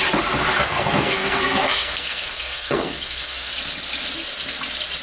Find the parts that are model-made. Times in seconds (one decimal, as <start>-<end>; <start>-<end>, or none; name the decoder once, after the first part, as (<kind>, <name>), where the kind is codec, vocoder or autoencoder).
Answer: 0.5-3.5 (codec, SNAC)